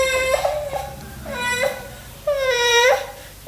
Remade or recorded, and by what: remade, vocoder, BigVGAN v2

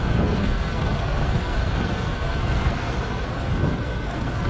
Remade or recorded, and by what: remade, codec, SNAC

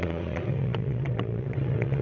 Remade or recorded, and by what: remade, vocoder, WaveNeXt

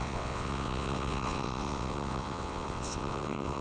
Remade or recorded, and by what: remade, vocoder, WaveNeXt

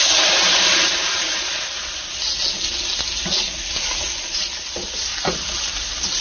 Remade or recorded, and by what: recorded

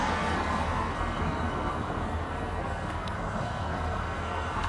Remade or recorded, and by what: remade, codec, SNAC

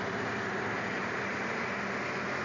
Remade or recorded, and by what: recorded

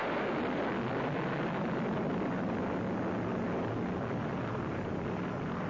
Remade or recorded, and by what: recorded